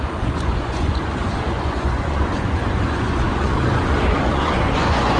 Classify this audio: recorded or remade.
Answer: remade